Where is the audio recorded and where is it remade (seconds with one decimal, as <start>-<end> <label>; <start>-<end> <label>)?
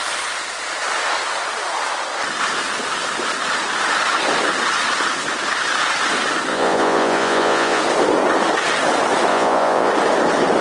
0.0-6.5 recorded; 6.5-7.8 remade; 7.8-9.3 recorded; 9.3-9.9 remade; 9.9-10.6 recorded